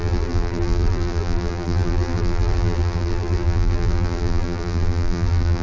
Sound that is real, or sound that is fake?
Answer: fake